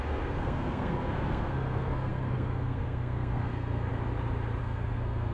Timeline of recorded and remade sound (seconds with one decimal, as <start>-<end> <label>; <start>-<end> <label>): 0.0-3.9 remade; 3.9-4.6 recorded; 4.6-5.3 remade